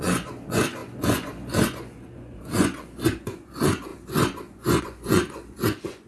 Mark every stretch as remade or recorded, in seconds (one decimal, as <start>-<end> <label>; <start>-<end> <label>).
0.0-6.1 remade